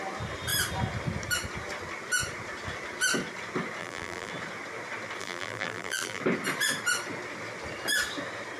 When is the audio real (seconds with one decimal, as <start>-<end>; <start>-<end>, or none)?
0.0-3.8; 4.3-5.2; 6.2-8.6